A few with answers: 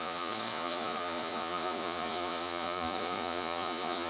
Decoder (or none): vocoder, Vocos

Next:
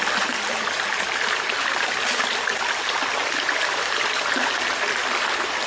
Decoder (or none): none